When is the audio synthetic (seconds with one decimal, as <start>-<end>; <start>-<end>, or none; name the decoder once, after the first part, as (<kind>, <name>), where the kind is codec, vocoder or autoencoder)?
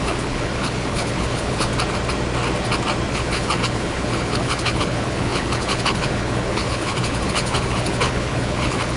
0.0-1.7 (codec, HILCodec); 3.1-9.0